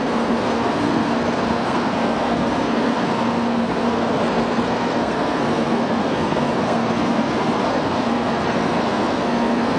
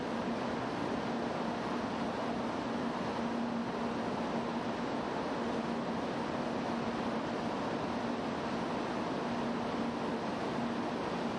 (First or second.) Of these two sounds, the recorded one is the second